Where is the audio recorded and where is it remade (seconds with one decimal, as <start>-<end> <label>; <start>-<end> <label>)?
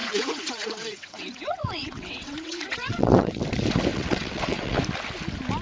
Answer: 0.0-3.4 remade; 3.4-3.9 recorded; 3.9-4.8 remade; 4.8-5.6 recorded